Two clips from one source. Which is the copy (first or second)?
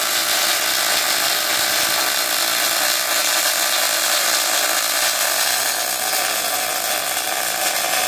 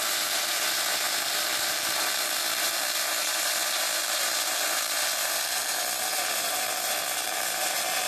second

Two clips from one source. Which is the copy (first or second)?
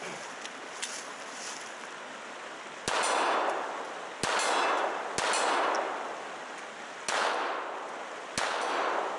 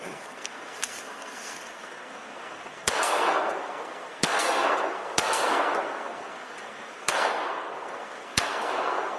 second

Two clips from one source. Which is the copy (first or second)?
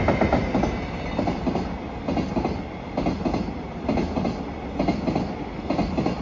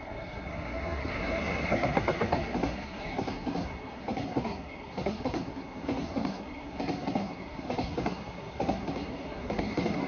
second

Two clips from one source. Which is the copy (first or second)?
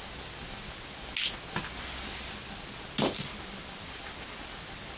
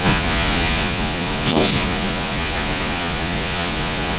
second